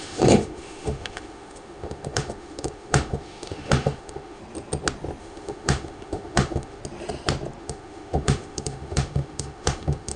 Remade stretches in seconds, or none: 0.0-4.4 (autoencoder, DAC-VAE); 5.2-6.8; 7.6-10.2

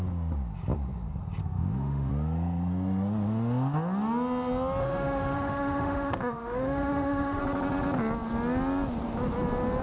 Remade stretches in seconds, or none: 1.4-2.1 (autoencoder, DAC-VAE); 4.8-7.4